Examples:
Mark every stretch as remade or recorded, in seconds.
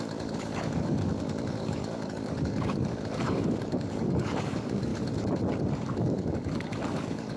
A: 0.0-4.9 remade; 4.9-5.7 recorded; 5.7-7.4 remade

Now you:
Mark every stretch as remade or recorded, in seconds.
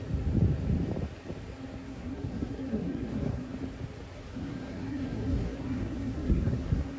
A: 0.0-1.8 recorded; 1.8-3.5 remade; 3.5-4.3 recorded; 4.3-7.0 remade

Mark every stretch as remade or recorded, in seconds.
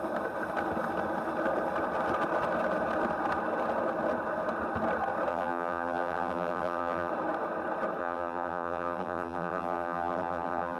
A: 0.0-5.3 recorded; 5.3-7.1 remade; 7.1-8.0 recorded; 8.0-10.8 remade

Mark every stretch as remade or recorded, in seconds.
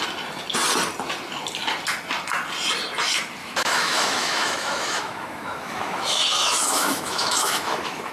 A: 0.0-3.4 recorded; 3.4-8.1 remade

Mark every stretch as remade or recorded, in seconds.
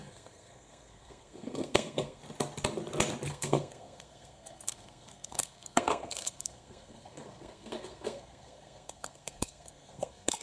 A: 0.0-2.2 remade; 2.2-3.3 recorded; 3.3-10.4 remade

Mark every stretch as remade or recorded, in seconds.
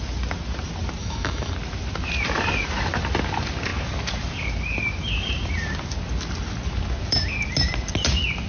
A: 0.0-1.0 recorded; 1.0-1.5 remade; 1.5-8.5 recorded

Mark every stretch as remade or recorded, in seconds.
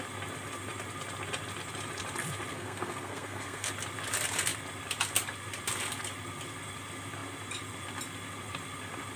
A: 0.0-2.5 recorded; 2.5-3.7 remade; 3.7-9.2 recorded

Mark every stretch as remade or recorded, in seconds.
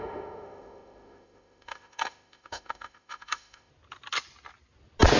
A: 0.0-3.7 remade; 3.7-5.2 recorded